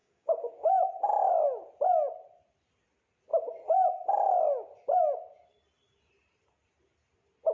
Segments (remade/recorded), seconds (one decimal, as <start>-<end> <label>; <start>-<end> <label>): 0.0-0.5 remade; 0.5-7.5 recorded